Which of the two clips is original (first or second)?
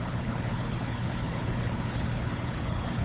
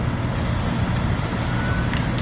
second